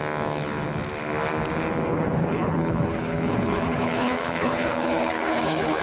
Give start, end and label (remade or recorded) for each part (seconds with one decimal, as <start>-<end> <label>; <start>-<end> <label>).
0.0-1.9 recorded; 1.9-5.8 remade